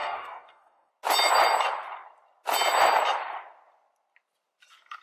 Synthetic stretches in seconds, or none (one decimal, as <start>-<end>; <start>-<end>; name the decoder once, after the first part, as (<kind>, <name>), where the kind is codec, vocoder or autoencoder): 0.0-0.9 (codec, DAC)

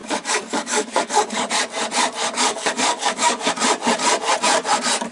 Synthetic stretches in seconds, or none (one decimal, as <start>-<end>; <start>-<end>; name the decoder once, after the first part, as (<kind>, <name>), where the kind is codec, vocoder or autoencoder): 0.0-1.5 (codec, DAC); 2.2-3.5

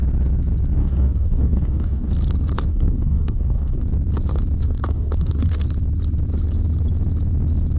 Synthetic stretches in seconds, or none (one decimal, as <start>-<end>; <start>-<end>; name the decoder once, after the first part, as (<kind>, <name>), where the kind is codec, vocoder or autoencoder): 0.8-2.1 (codec, DAC); 2.7-3.8; 4.6-5.6

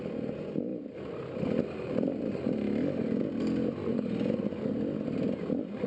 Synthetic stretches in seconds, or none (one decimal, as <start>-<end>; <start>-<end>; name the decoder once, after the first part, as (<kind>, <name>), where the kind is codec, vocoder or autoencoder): none

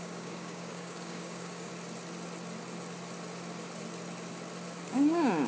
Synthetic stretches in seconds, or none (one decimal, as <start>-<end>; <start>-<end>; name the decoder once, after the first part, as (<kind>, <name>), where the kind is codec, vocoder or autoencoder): 0.0-1.7 (codec, DAC); 4.9-5.5

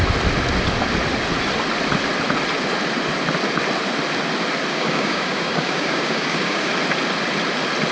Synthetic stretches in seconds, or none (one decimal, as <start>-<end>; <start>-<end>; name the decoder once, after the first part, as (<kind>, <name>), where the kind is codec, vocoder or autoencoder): 4.7-6.7 (codec, DAC)

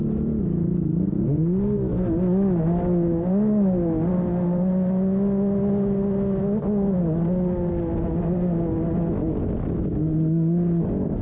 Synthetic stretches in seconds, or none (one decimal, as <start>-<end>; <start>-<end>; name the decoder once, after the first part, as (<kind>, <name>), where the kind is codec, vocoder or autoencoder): none

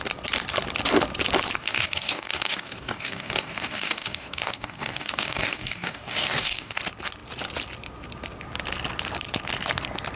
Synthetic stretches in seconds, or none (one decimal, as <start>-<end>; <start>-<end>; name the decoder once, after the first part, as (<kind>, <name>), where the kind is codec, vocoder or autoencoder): 1.6-6.8 (codec, DAC)